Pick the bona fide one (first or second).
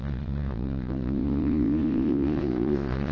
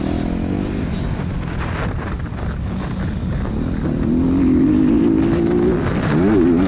second